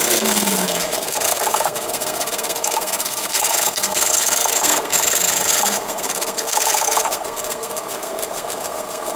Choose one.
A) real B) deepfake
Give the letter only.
B